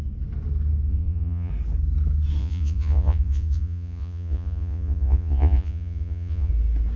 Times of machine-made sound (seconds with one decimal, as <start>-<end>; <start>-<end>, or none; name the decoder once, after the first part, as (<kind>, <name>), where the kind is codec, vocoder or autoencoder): 0.9-1.5 (vocoder, Vocos); 2.4-6.5